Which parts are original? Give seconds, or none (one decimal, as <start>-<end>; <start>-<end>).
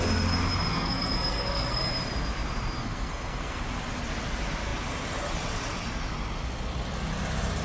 0.0-0.7; 1.9-2.8; 3.6-7.6